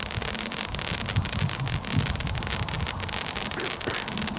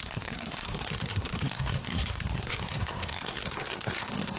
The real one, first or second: first